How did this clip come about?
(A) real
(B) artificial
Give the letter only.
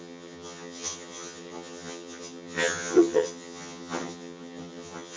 B